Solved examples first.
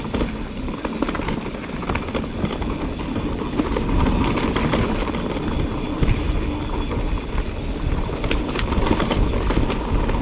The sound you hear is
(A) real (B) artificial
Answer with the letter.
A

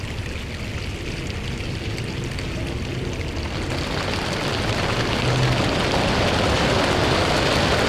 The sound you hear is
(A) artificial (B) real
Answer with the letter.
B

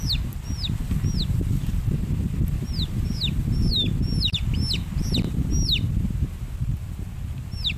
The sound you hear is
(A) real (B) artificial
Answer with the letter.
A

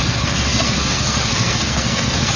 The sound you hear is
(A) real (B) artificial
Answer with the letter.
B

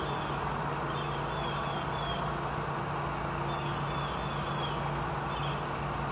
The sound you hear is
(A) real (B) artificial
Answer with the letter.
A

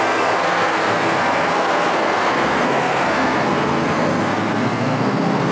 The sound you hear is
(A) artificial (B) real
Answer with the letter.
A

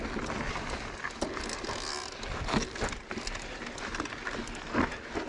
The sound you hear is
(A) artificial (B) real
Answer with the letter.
B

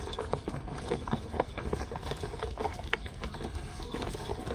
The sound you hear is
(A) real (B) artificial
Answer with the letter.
B